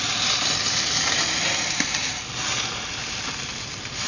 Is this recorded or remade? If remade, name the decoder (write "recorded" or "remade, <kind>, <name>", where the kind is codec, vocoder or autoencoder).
recorded